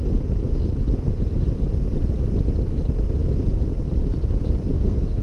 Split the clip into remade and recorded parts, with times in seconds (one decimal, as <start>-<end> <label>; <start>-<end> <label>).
0.0-4.7 recorded; 4.7-5.2 remade